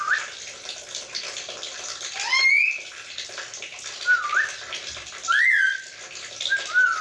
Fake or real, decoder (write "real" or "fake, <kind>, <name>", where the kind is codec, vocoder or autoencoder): real